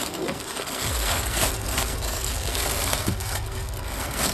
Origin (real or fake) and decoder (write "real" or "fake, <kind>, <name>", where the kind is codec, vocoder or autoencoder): fake, codec, SNAC